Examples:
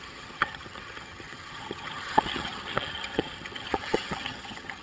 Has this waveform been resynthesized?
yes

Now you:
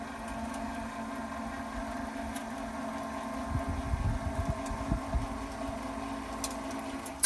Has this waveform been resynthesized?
no